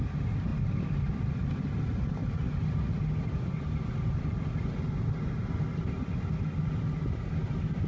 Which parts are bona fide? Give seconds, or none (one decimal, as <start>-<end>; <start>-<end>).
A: 0.0-7.9